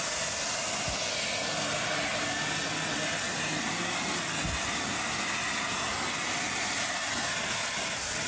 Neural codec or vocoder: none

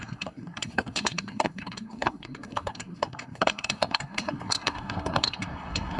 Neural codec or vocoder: codec, SNAC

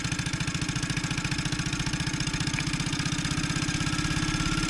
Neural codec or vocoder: none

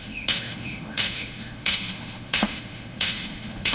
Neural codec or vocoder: autoencoder, DAC-VAE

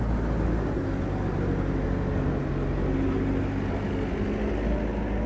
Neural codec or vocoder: none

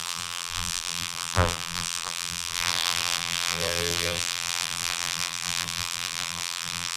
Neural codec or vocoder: vocoder, BigVGAN v2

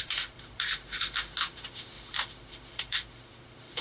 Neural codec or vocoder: autoencoder, DAC-VAE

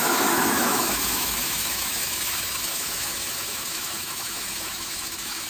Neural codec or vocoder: autoencoder, DAC-VAE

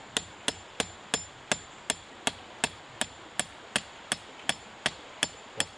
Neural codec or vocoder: none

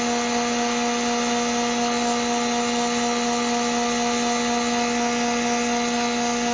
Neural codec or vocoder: none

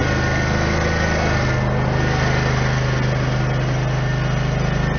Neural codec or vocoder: none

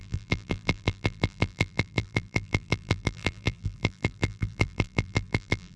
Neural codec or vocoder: vocoder, BigVGAN v2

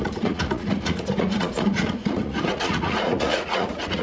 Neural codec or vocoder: vocoder, Vocos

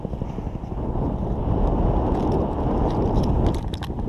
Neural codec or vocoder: none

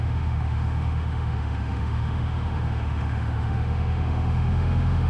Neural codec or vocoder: autoencoder, DAC-VAE